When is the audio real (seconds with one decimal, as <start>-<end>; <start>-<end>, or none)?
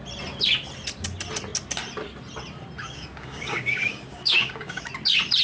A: 0.0-2.8; 4.9-5.4